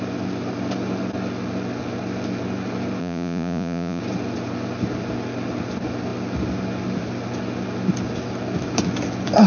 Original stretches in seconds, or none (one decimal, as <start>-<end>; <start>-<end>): 0.0-3.0; 4.0-9.5